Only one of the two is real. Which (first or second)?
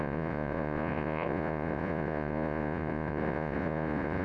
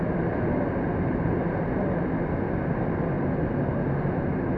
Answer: second